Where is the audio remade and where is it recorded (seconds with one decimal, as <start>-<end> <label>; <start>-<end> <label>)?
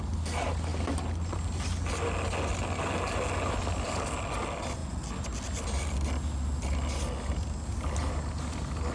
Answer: 0.0-8.9 recorded